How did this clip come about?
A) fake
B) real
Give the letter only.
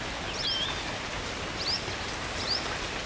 B